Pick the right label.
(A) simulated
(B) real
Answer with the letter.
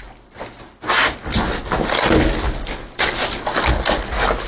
B